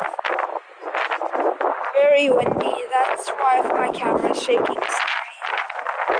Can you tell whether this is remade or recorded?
recorded